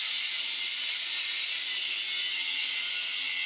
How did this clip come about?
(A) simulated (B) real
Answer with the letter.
B